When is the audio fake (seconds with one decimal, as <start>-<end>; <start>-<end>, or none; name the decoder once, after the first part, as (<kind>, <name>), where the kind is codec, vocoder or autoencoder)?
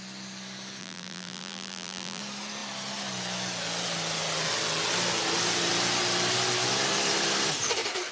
0.8-2.2 (vocoder, BigVGAN v2)